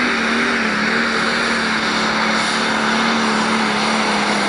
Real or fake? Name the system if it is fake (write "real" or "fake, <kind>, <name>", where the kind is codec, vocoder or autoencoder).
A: real